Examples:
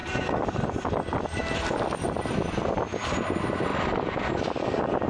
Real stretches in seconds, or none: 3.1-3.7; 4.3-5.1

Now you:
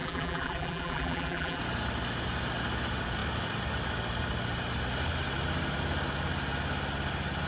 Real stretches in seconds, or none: 1.6-7.5